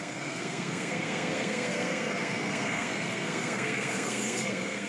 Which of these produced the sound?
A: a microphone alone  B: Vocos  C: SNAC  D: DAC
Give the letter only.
C